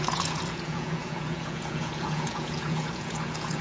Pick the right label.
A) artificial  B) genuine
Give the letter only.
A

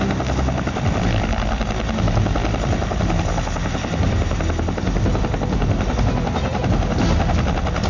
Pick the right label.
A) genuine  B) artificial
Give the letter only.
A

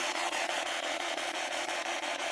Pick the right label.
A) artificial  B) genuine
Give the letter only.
A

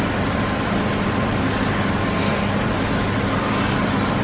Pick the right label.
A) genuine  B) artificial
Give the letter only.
A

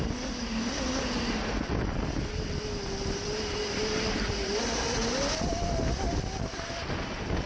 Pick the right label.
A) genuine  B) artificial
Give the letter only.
A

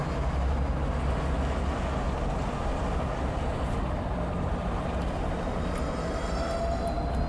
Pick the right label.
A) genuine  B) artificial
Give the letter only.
A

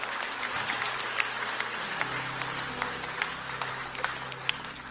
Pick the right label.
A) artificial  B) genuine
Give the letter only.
B